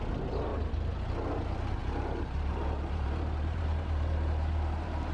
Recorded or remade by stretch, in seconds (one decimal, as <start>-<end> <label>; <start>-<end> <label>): 0.0-1.8 recorded; 1.8-5.1 remade